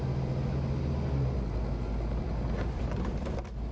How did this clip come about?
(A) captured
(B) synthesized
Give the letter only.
A